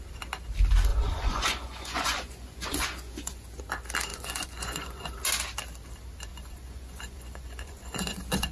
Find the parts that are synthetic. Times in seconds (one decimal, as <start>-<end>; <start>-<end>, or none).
0.9-3.6; 4.1-5.1; 6.3-8.5

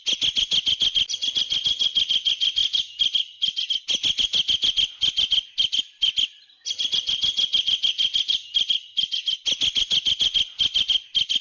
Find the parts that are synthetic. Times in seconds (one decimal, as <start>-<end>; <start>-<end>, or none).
none

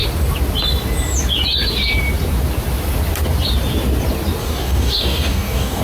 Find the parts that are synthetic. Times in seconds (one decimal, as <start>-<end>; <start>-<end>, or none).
4.4-5.8

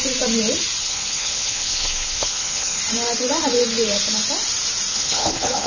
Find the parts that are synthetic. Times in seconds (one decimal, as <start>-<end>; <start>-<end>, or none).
0.8-2.8; 4.9-5.7

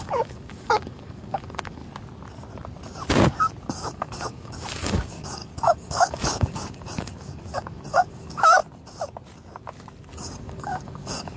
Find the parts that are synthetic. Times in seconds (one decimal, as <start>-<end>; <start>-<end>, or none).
0.0-1.8; 3.7-8.6; 10.1-11.4